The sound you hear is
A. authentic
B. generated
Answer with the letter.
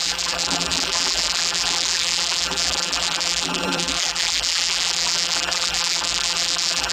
B